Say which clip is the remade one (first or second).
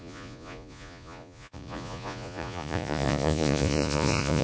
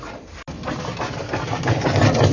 first